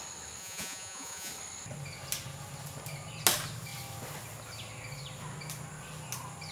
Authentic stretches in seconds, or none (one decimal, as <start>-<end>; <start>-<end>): 0.0-0.4; 1.3-6.5